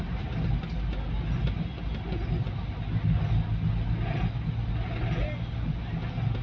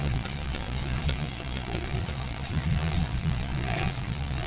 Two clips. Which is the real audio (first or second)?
first